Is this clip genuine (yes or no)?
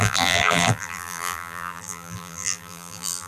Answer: no